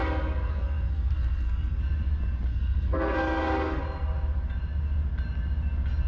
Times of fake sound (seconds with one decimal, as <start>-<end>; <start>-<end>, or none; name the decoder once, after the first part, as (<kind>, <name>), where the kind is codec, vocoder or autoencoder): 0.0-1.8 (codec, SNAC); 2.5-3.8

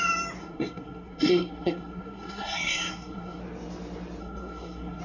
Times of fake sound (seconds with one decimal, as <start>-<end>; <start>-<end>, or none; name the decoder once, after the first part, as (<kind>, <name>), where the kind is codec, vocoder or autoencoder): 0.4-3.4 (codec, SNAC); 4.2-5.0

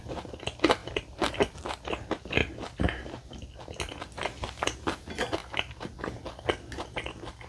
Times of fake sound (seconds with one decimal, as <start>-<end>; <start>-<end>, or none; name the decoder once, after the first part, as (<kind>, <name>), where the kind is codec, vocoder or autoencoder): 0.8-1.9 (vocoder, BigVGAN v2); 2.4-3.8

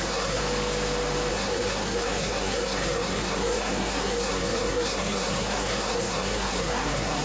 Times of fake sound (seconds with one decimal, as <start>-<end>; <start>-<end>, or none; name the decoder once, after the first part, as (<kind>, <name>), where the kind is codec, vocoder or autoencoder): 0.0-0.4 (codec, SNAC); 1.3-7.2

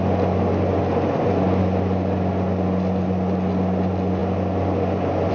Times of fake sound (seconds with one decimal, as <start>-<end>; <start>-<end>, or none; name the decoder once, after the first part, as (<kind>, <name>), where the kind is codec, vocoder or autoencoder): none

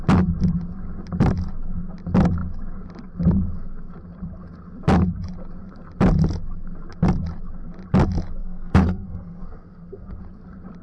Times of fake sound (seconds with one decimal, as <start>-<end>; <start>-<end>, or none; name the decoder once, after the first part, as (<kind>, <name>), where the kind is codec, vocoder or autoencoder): 8.4-10.2 (codec, SNAC)

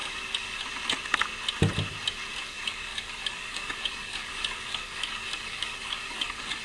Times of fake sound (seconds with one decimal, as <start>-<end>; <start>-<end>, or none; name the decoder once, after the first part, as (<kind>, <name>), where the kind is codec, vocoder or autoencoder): 0.0-0.6 (codec, DAC); 2.3-6.6